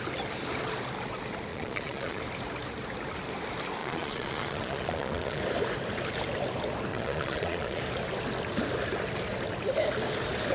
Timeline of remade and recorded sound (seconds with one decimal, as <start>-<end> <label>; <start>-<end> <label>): 0.0-1.5 recorded; 1.5-2.2 remade; 2.2-3.8 recorded; 3.8-5.4 remade; 5.4-6.9 recorded; 6.9-7.8 remade; 7.8-10.5 recorded